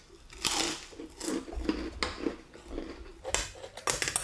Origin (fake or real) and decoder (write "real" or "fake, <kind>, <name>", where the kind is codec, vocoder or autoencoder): real